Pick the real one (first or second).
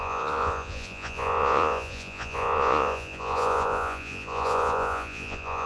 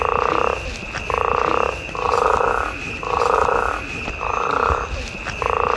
second